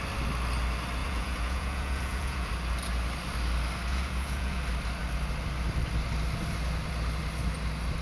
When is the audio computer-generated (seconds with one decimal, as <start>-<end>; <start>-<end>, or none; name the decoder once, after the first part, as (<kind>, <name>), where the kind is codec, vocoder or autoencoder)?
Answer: 1.0-2.5 (vocoder, Vocos); 3.9-4.6